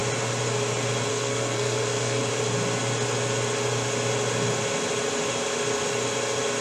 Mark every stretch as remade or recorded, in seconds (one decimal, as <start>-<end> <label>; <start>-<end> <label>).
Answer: 0.0-1.1 recorded; 1.1-2.2 remade; 2.2-6.6 recorded